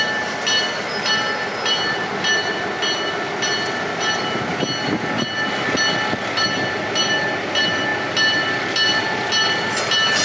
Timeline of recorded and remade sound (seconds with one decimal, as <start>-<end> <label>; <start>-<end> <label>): 0.0-10.2 recorded